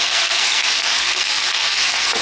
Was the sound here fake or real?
fake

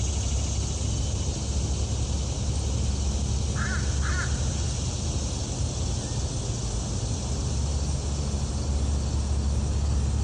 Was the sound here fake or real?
real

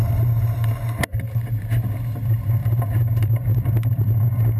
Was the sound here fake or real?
real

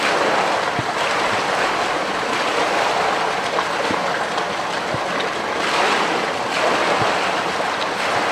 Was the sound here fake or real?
real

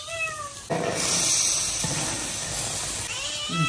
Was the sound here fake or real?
real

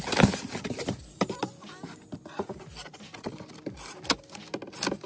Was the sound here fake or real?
real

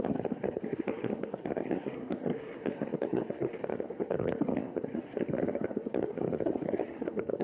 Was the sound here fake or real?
fake